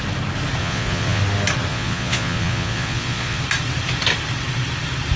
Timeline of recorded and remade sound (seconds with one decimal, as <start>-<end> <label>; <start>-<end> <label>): 0.0-0.6 recorded; 0.6-1.2 remade; 1.2-1.7 recorded; 1.7-3.4 remade; 3.4-5.2 recorded